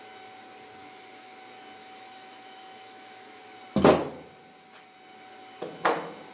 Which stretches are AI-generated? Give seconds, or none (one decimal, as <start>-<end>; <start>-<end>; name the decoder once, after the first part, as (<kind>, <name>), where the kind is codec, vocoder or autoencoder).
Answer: 0.8-1.3 (autoencoder, DAC-VAE); 1.8-3.4